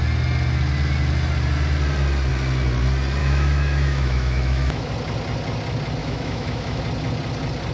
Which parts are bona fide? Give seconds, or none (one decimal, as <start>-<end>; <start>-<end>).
0.0-3.2; 4.9-6.0; 6.8-7.7